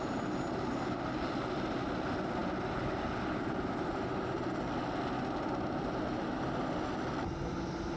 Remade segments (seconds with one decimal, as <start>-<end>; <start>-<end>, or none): none